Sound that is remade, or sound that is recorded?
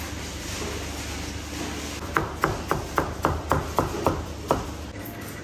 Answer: recorded